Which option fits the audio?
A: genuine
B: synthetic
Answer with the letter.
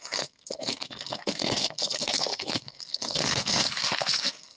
B